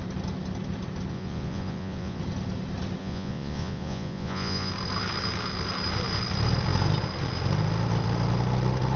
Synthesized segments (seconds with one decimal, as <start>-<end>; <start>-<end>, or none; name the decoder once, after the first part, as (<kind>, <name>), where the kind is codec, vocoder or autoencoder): 1.1-2.2 (vocoder, Vocos); 3.0-4.7